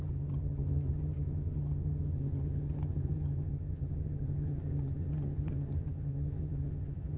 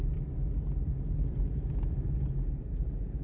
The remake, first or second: first